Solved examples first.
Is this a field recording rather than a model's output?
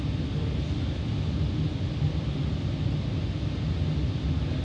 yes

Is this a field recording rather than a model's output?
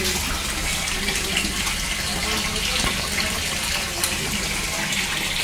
yes